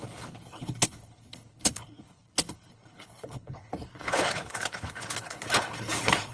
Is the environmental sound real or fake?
fake